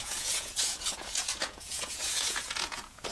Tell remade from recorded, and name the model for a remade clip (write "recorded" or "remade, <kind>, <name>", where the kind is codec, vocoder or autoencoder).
remade, vocoder, Vocos